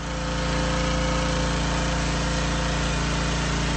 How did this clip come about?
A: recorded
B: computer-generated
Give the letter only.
A